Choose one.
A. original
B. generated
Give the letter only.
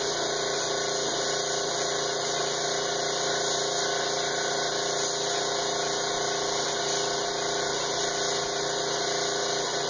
A